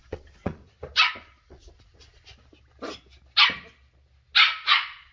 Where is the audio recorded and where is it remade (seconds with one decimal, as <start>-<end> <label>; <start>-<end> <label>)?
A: 0.0-0.6 remade; 0.6-1.2 recorded; 1.2-1.6 remade; 1.6-4.6 recorded; 4.6-5.1 remade

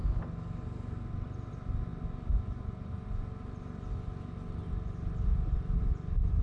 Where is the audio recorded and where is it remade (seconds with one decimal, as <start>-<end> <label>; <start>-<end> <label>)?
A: 0.0-6.4 recorded

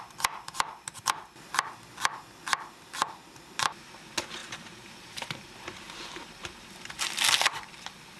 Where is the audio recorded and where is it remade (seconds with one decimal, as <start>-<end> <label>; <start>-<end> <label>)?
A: 0.0-4.4 recorded; 4.4-7.0 remade; 7.0-8.2 recorded

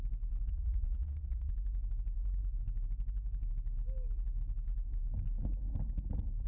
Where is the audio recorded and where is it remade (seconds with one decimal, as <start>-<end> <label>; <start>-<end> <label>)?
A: 0.0-0.5 recorded; 0.5-1.5 remade; 1.5-6.5 recorded

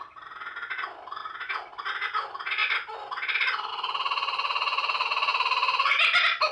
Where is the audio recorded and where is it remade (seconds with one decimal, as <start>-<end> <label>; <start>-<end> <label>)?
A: 0.0-6.5 recorded

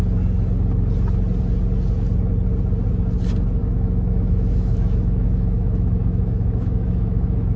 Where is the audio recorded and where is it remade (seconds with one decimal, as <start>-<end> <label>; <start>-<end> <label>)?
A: 0.0-3.6 recorded; 3.6-7.6 remade

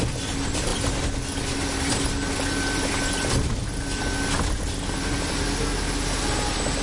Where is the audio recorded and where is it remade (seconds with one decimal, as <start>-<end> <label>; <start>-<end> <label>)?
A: 0.0-6.8 recorded

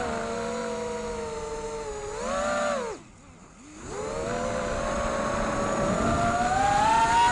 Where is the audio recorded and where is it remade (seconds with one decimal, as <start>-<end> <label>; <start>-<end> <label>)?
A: 0.0-7.3 recorded